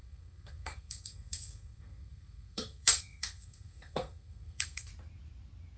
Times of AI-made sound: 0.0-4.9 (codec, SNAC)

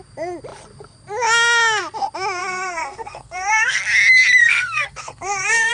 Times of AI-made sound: 2.4-3.8 (codec, SNAC); 4.4-5.7

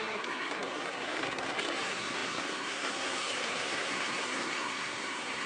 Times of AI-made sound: 0.0-5.5 (codec, SNAC)

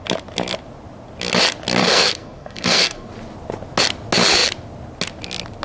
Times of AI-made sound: 1.8-3.1 (codec, SNAC)

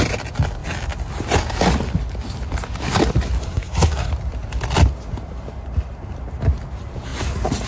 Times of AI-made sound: 3.4-4.1 (codec, SNAC)

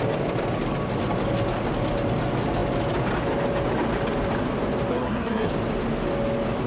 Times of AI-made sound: 4.9-5.5 (codec, SNAC)